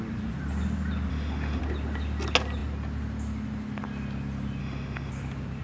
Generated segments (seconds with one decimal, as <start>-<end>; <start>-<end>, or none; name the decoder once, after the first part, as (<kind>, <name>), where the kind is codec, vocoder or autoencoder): 1.1-1.6 (autoencoder, DAC-VAE); 4.6-5.1